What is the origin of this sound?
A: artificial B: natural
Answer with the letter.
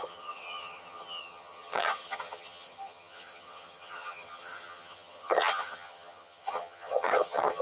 A